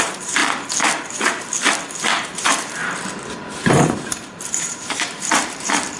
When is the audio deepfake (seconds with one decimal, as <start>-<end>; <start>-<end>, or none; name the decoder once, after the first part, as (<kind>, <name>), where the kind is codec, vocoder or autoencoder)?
0.0-0.4 (vocoder, BigVGAN v2); 2.2-2.8; 3.7-6.0